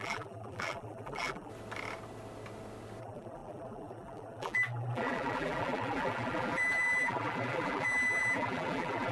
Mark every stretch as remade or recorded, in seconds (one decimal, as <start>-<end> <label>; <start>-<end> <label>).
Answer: 0.0-1.5 remade; 1.5-3.0 recorded; 3.0-9.1 remade